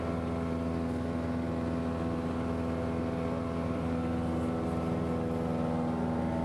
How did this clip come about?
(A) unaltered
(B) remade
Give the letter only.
A